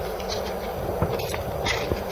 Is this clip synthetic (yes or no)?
no